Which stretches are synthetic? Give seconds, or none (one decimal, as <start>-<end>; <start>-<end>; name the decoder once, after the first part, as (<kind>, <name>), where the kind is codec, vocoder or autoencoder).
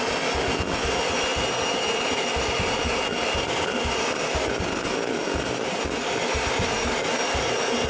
none